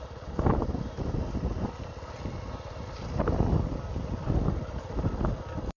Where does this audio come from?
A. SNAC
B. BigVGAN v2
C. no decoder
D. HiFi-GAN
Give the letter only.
C